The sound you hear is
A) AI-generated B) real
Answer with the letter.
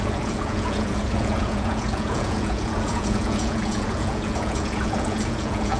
A